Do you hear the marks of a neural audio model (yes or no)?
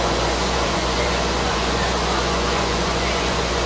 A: yes